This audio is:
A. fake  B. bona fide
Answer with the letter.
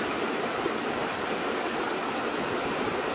B